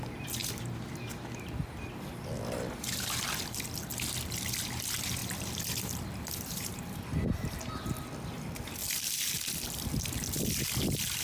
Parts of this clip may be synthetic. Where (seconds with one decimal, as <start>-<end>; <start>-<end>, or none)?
none